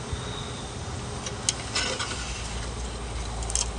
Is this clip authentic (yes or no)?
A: yes